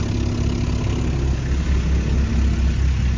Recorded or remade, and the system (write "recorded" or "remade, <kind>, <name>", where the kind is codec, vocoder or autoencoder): recorded